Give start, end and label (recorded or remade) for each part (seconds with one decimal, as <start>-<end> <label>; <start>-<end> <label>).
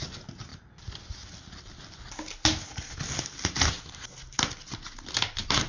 0.0-5.7 recorded